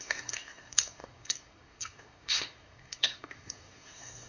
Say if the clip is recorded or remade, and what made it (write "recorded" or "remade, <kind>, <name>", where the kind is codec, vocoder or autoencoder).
remade, codec, SNAC